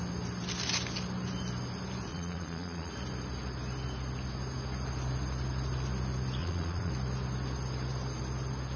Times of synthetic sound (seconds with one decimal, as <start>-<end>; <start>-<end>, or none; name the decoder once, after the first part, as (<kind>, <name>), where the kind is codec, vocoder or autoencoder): 2.1-2.9 (vocoder, Vocos); 6.4-6.9